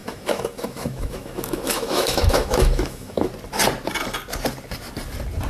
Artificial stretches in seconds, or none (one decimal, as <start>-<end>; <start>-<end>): 0.0-3.3

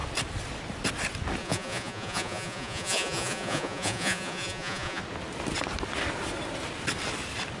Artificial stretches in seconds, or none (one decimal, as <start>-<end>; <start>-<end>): 1.4-5.0

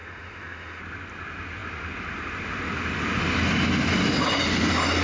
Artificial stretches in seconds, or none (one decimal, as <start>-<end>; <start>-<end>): 0.0-0.8

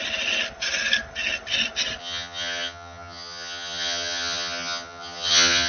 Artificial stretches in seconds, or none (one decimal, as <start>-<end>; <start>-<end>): 2.0-5.7

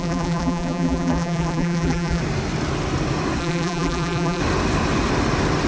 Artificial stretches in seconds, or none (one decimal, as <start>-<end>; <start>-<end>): 0.0-2.2; 3.4-4.4

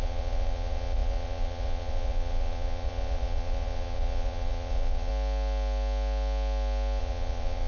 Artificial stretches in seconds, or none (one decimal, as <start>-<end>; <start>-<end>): 0.0-5.1; 7.0-7.7

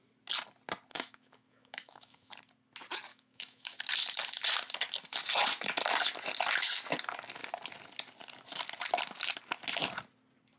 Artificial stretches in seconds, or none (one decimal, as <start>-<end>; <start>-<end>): 0.9-2.3; 3.1-3.8